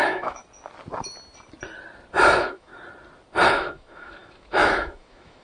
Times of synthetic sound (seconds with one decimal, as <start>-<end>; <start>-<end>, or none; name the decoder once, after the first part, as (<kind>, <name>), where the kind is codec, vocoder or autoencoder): 0.0-0.4 (autoencoder, DAC-VAE); 2.2-2.7; 3.5-5.4